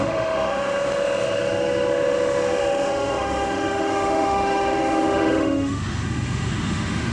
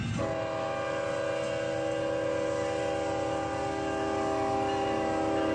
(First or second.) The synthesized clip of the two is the first